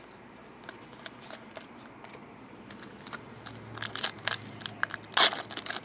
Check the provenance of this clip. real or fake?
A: real